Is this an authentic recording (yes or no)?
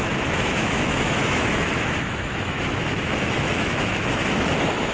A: no